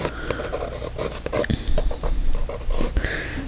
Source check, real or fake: real